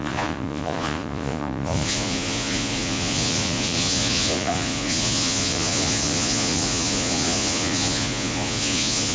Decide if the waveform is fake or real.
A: fake